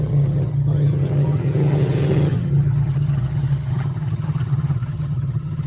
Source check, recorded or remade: remade